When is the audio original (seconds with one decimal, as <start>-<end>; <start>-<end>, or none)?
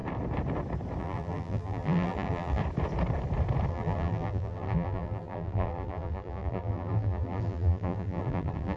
0.0-1.0; 2.6-3.7